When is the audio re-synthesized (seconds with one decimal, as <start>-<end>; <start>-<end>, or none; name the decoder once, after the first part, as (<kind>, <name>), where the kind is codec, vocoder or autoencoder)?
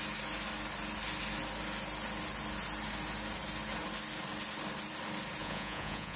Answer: 5.4-6.2 (vocoder, Vocos)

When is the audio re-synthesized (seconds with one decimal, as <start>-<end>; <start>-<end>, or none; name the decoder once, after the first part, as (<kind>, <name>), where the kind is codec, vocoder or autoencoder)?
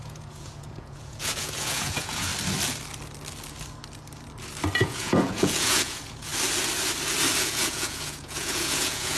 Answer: 0.0-2.3 (vocoder, Vocos); 4.8-6.3; 7.4-9.2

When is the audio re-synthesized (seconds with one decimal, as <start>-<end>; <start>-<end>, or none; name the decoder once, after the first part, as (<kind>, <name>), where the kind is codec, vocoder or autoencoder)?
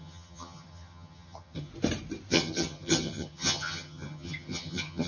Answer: 0.0-1.7 (vocoder, HiFi-GAN); 2.3-5.1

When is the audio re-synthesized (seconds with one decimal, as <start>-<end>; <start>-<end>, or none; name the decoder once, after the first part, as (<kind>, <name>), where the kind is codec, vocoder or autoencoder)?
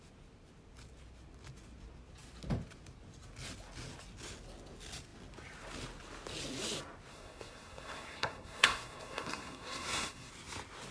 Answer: 7.1-10.3 (codec, SNAC)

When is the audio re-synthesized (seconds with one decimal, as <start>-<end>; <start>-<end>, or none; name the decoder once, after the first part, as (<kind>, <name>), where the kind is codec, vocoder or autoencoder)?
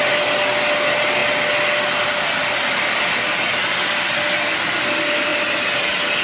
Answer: none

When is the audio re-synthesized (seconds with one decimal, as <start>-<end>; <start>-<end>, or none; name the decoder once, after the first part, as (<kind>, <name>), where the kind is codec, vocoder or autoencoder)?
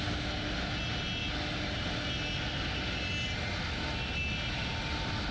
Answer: none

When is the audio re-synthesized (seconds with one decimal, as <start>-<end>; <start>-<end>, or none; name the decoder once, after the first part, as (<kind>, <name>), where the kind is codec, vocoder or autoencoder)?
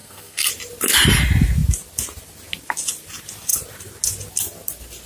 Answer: 0.0-0.5 (codec, SNAC)